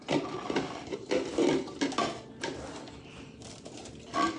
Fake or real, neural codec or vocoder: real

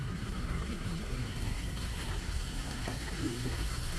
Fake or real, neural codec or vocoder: fake, codec, SNAC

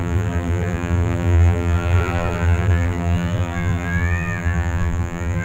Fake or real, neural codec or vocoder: fake, vocoder, BigVGAN v2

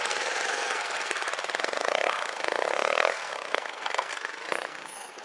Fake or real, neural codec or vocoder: fake, codec, SNAC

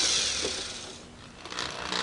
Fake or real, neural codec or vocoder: real